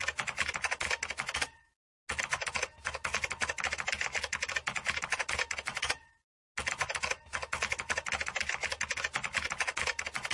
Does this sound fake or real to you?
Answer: real